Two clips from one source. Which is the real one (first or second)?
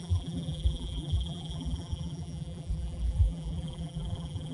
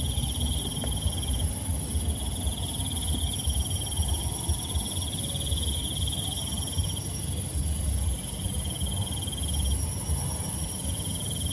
second